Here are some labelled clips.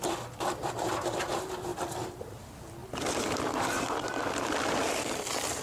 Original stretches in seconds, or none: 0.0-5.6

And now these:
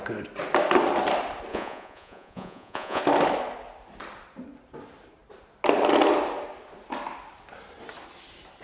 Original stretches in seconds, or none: 0.0-1.5; 3.0-8.6

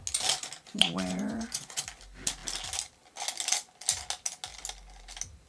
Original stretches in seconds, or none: 0.0-0.7; 1.8-5.5